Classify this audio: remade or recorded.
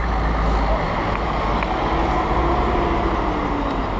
recorded